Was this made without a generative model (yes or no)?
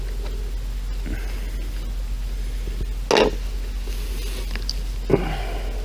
yes